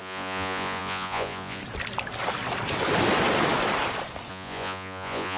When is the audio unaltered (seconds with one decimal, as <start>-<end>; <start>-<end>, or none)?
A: 1.6-4.3